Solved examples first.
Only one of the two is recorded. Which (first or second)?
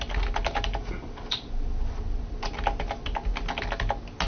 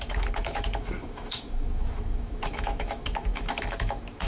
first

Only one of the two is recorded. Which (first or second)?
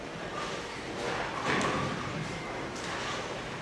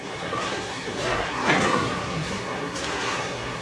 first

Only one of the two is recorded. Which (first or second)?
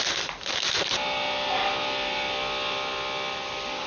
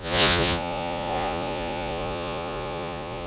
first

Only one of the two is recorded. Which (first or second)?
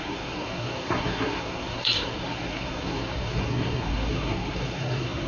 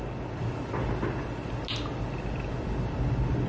second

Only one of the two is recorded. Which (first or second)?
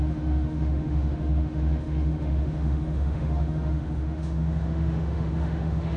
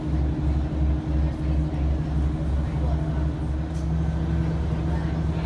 second